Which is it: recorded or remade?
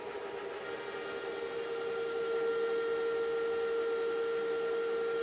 recorded